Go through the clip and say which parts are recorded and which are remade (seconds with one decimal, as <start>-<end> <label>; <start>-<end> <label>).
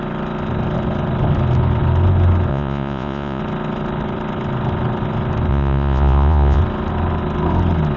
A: 0.0-2.5 recorded; 2.5-3.4 remade; 3.4-5.5 recorded; 5.5-6.6 remade; 6.6-8.0 recorded